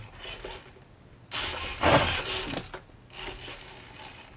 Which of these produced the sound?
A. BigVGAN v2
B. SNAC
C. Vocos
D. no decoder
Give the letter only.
D